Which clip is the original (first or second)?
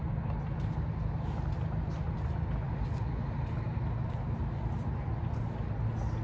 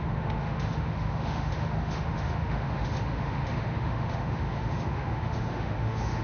first